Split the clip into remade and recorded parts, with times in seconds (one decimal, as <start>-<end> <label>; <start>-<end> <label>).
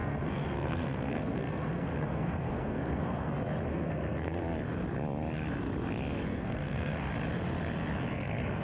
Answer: 0.0-3.3 remade; 3.3-3.7 recorded; 3.7-4.4 remade; 4.4-6.3 recorded; 6.3-7.1 remade; 7.1-8.6 recorded